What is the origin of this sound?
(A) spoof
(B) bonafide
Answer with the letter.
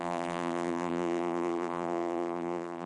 A